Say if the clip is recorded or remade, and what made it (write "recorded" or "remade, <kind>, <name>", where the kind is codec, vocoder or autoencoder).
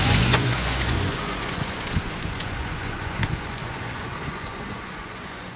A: remade, vocoder, Vocos